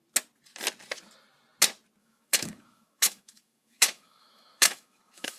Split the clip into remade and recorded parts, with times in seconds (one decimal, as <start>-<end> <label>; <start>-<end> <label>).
0.0-2.0 recorded; 2.0-5.4 remade